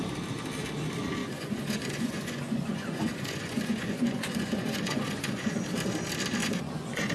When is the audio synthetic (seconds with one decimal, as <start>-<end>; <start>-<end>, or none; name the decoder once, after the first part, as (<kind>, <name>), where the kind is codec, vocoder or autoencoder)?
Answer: 1.2-5.5 (vocoder, Vocos); 6.4-7.1